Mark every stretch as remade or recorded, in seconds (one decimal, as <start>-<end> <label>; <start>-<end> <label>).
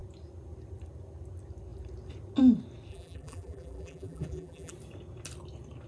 0.0-2.9 recorded; 2.9-4.7 remade; 4.7-5.9 recorded